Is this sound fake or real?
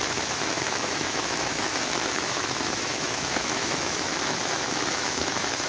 fake